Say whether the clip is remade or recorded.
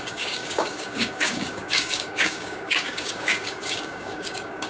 remade